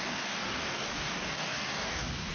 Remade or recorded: remade